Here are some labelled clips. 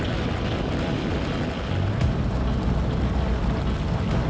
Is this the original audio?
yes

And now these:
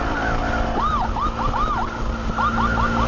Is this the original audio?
yes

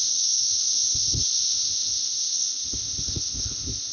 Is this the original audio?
no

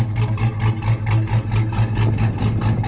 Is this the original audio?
yes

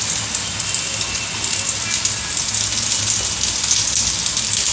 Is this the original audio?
yes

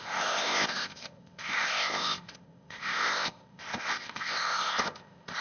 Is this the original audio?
no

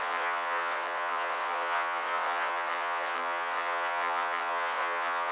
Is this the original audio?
no